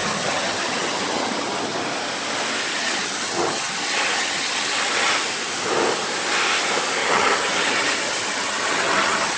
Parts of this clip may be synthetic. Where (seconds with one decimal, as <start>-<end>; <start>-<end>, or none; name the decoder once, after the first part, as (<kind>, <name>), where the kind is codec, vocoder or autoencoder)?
0.0-1.8 (vocoder, HiFi-GAN); 2.7-5.2; 7.0-9.4